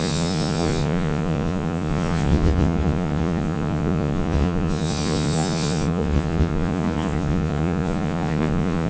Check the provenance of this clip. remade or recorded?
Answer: remade